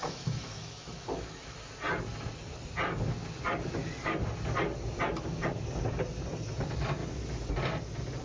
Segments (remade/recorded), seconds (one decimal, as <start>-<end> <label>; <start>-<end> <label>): 0.0-1.7 remade; 1.7-8.2 recorded